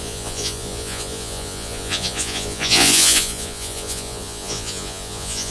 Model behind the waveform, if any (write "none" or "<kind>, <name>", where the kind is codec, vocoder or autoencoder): vocoder, Vocos